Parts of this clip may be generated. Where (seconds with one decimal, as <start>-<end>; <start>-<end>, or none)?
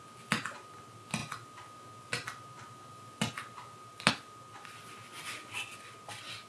none